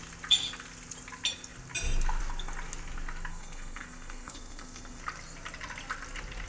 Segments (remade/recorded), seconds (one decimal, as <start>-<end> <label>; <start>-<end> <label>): 0.0-3.3 recorded; 3.3-5.0 remade; 5.0-6.5 recorded